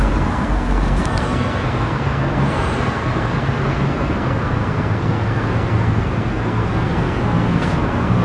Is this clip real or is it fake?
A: fake